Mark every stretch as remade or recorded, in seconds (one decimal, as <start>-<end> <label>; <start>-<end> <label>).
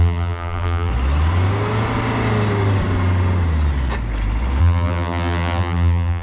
0.0-0.9 remade; 0.9-4.6 recorded; 4.6-6.2 remade